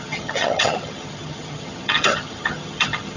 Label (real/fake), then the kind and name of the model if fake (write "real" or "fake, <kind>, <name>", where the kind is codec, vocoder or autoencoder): fake, vocoder, HiFi-GAN